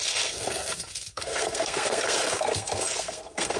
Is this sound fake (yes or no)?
yes